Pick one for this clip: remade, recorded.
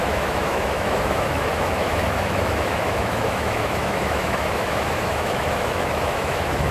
remade